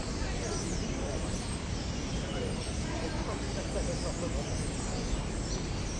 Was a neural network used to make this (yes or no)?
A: no